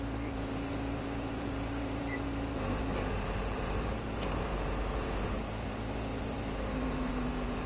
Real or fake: fake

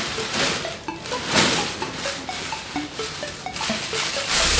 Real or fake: real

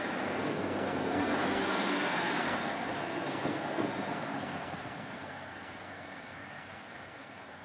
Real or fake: fake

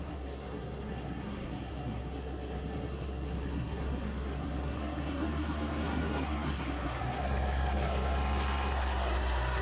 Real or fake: fake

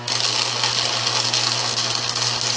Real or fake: real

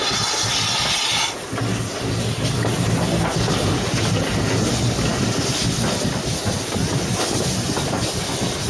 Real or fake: real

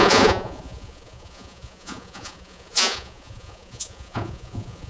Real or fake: fake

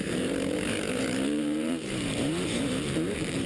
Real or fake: fake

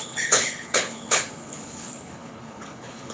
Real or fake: fake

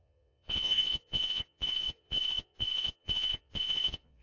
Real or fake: fake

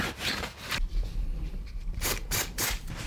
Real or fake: fake